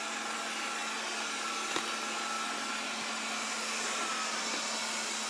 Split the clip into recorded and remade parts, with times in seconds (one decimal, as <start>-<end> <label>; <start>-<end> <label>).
0.0-5.3 recorded